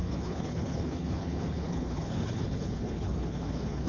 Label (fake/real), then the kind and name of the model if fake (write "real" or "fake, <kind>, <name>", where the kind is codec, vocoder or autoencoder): fake, codec, HILCodec